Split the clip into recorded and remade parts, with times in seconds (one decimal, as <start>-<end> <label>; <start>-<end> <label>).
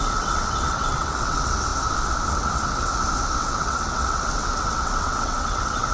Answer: 0.0-1.7 remade; 1.7-2.3 recorded; 2.3-2.9 remade; 2.9-3.4 recorded; 3.4-5.9 remade